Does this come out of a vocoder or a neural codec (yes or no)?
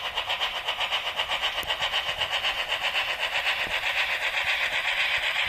no